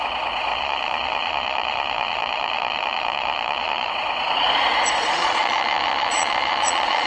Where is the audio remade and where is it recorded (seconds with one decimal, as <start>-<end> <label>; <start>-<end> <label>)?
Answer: 0.0-0.5 recorded; 0.5-3.9 remade; 3.9-5.2 recorded; 5.2-7.1 remade